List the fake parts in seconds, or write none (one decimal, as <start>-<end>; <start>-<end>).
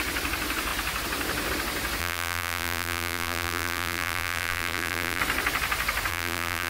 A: 2.0-5.2; 6.1-6.7